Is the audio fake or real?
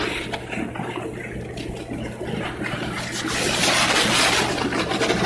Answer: real